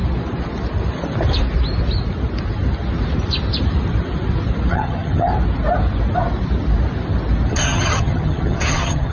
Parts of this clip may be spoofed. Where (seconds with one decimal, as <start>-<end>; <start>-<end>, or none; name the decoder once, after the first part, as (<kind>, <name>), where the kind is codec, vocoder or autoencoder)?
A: 4.7-5.3 (vocoder, HiFi-GAN); 7.5-9.1